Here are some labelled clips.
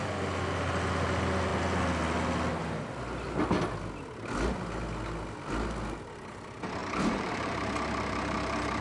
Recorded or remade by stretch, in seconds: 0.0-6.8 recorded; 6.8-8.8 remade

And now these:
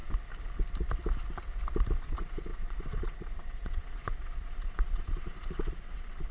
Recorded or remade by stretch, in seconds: 0.0-2.0 recorded; 2.0-6.3 remade

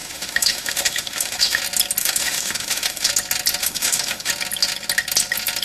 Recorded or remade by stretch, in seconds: 0.0-1.6 remade; 1.6-2.0 recorded; 2.0-3.1 remade; 3.1-3.6 recorded; 3.6-4.3 remade; 4.3-5.6 recorded

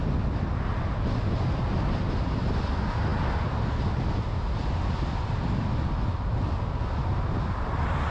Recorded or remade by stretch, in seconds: 0.0-8.1 recorded

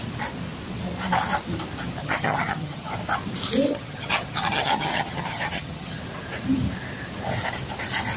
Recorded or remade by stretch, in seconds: 0.0-2.0 recorded; 2.0-2.9 remade; 2.9-3.7 recorded; 3.7-6.0 remade; 6.0-8.2 recorded

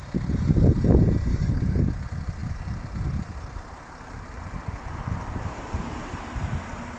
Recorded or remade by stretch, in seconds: 0.0-1.3 recorded; 1.3-1.9 remade; 1.9-7.0 recorded

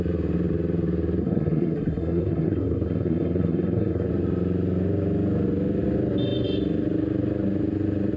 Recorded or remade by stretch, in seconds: 0.0-1.2 recorded; 1.2-4.1 remade; 4.1-8.2 recorded

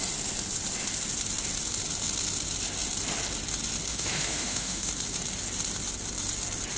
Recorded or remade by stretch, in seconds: 0.0-3.9 recorded; 3.9-4.9 remade; 4.9-6.8 recorded